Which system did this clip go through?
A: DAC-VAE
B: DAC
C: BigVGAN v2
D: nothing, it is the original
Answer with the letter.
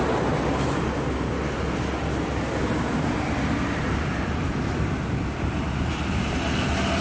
D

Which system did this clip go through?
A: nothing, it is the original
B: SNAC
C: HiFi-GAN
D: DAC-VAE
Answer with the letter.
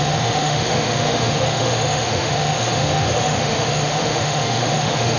D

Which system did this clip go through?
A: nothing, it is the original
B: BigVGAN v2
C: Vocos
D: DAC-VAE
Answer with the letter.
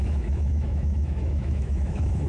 D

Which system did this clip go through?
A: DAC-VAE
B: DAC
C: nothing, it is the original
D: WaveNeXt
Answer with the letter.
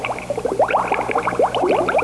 C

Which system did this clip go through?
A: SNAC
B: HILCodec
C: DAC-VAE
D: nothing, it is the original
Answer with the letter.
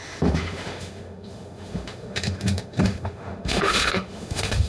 C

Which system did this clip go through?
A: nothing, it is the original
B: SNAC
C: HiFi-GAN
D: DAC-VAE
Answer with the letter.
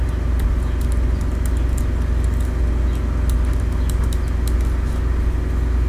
A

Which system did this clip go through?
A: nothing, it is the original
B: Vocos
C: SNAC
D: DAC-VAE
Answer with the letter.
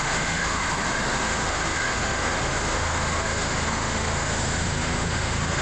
D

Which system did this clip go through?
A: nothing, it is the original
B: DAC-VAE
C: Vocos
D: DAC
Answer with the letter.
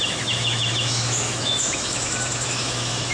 B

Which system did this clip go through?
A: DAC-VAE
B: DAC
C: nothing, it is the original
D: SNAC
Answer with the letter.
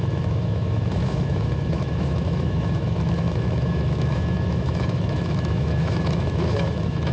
A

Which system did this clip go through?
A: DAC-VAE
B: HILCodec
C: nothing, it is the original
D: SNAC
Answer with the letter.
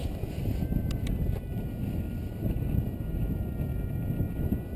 C